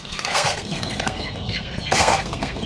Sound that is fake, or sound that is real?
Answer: fake